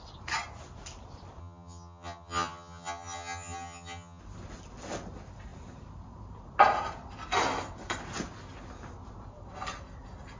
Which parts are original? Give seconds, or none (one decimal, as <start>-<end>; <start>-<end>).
0.0-1.4; 4.2-10.4